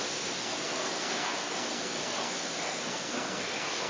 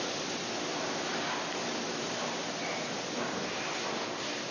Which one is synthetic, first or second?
first